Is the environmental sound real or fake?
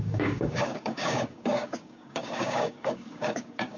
fake